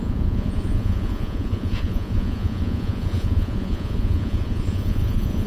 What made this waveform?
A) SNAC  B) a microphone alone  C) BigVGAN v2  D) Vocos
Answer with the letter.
D